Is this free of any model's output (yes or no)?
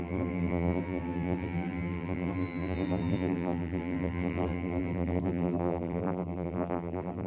no